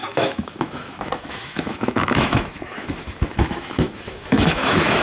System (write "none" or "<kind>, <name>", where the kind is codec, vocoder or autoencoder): autoencoder, DAC-VAE